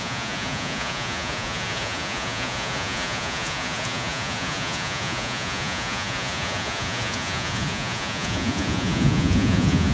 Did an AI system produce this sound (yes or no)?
yes